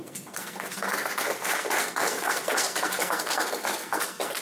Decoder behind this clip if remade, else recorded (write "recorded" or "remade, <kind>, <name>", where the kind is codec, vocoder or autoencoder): remade, codec, SNAC